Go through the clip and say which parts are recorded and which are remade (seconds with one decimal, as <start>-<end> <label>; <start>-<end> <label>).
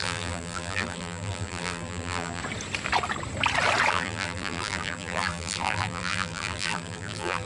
0.0-2.4 remade; 2.4-3.9 recorded; 3.9-7.5 remade